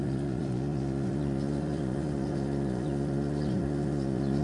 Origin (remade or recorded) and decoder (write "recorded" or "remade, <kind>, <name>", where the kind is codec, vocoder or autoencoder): remade, vocoder, Vocos